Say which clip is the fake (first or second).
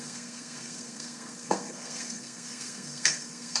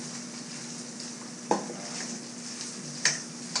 first